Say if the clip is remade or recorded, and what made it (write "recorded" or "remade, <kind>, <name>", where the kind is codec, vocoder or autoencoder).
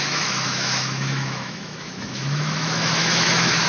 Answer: remade, autoencoder, DAC-VAE